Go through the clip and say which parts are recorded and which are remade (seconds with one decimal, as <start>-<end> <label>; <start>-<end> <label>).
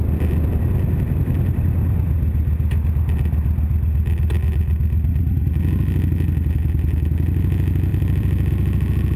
0.0-7.9 recorded; 7.9-8.5 remade; 8.5-9.2 recorded